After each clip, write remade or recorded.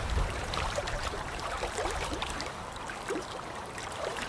remade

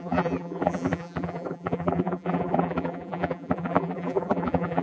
remade